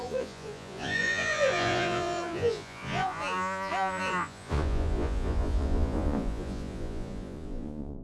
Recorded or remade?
remade